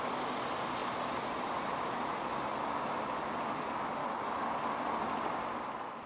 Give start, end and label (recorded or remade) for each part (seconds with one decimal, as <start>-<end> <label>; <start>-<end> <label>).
0.0-4.0 recorded; 4.0-4.6 remade; 4.6-6.1 recorded